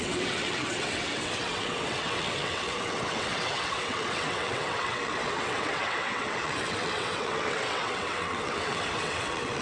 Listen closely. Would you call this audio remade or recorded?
remade